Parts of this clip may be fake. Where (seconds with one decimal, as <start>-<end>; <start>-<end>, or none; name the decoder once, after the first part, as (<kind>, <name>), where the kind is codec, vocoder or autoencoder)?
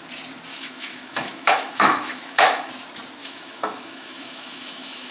0.5-2.7 (autoencoder, DAC-VAE); 3.2-5.1